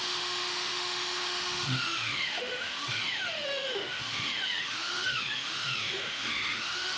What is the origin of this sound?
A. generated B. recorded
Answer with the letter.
A